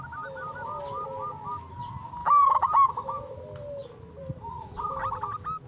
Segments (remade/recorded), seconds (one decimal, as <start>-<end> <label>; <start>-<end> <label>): 0.0-2.2 recorded; 2.2-3.3 remade; 3.3-5.7 recorded